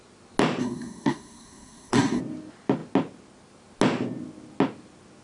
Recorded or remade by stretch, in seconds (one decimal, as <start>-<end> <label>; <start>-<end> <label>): 0.0-0.6 recorded; 0.6-2.2 remade; 2.2-5.2 recorded